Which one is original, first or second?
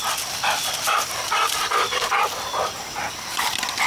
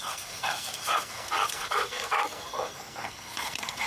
first